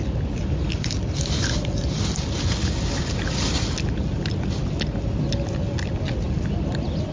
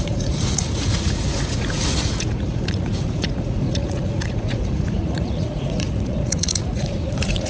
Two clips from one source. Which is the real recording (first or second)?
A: first